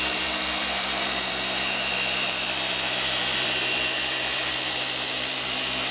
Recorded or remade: remade